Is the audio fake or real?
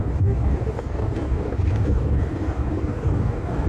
fake